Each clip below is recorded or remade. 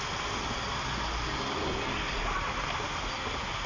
recorded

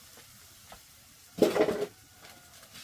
recorded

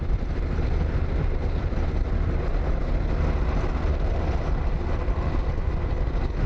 recorded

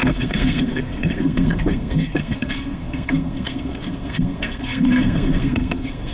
remade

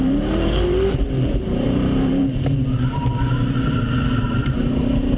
remade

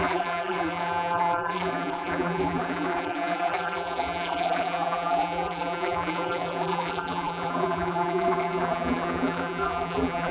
remade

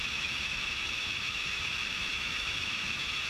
remade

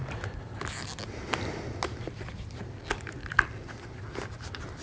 recorded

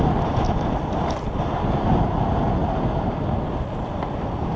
recorded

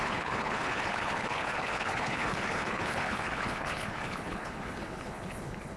remade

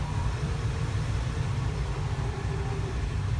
remade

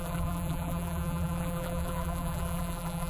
remade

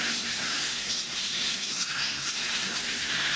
remade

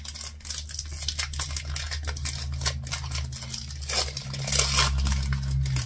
recorded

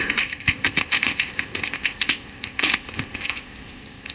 remade